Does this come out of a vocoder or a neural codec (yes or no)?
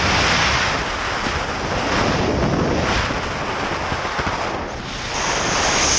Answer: no